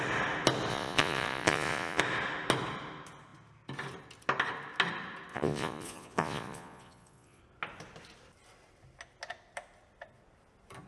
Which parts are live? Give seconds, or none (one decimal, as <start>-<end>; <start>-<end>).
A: 0.0-0.7; 2.0-5.3; 7.4-10.9